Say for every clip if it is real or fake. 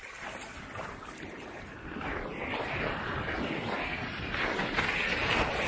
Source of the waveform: real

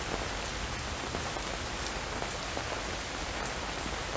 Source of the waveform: real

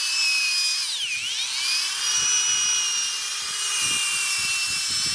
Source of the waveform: real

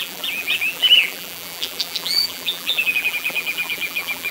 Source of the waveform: fake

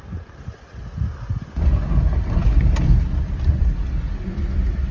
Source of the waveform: real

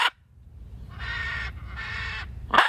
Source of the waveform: fake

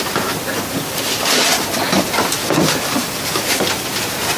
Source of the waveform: fake